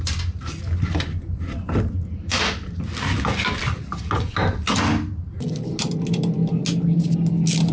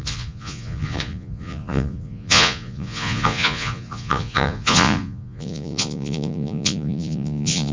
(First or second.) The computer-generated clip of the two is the second